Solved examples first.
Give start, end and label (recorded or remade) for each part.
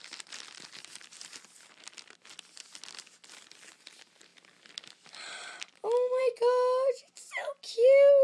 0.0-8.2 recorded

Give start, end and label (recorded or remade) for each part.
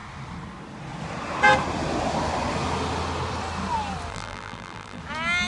0.0-4.1 recorded; 4.1-5.0 remade; 5.0-5.5 recorded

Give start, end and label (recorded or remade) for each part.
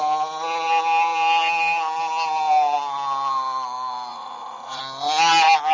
0.0-4.1 recorded; 4.1-4.8 remade; 4.8-5.7 recorded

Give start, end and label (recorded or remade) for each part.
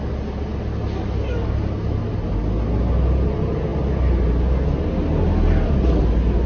0.0-6.5 recorded